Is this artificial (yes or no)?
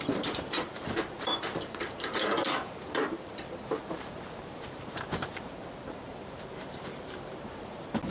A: yes